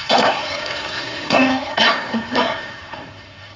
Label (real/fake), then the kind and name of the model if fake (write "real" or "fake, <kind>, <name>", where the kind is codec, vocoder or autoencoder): fake, codec, SNAC